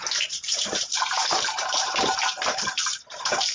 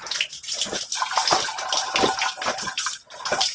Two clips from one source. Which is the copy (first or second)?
first